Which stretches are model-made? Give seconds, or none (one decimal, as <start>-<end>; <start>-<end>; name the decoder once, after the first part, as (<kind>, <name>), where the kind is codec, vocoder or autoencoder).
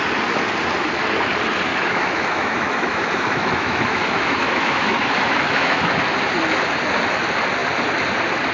1.7-5.9 (autoencoder, DAC-VAE)